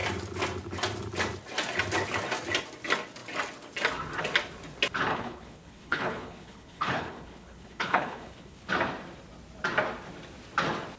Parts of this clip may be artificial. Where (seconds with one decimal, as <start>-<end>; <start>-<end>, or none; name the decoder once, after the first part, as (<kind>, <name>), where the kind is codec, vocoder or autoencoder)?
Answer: 5.1-8.7 (codec, HILCodec)